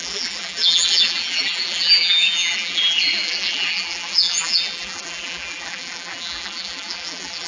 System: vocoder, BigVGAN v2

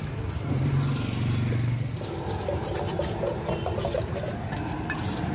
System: none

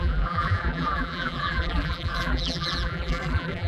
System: vocoder, BigVGAN v2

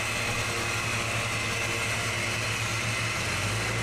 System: none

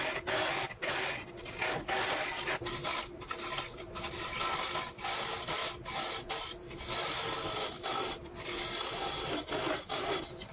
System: none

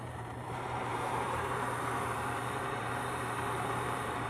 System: vocoder, BigVGAN v2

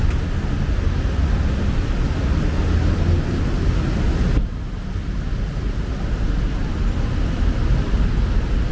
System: none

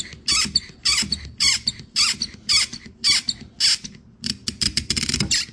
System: none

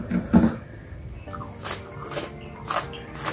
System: none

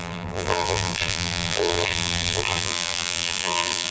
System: vocoder, BigVGAN v2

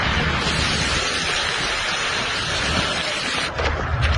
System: none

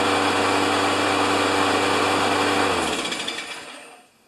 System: none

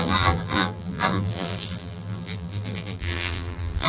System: vocoder, BigVGAN v2